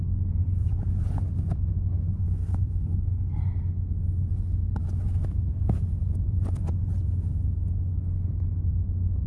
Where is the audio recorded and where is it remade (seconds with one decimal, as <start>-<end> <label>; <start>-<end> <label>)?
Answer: 0.0-2.2 recorded; 2.2-3.4 remade; 3.4-9.3 recorded